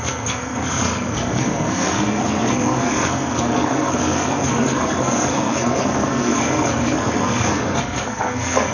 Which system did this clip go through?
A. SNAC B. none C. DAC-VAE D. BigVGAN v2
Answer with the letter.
A